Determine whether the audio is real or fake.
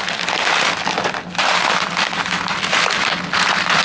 real